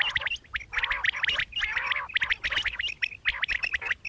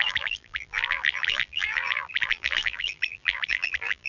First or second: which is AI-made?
second